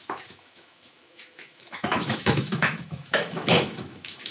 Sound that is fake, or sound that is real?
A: fake